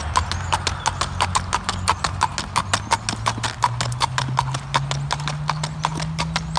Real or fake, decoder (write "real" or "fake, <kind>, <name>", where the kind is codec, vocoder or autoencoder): real